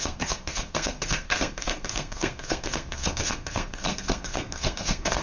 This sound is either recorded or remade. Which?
remade